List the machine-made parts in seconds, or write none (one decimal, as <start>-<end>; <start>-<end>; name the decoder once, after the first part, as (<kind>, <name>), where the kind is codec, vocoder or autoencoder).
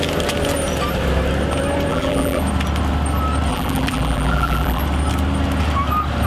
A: 1.9-2.4 (vocoder, BigVGAN v2); 3.5-4.8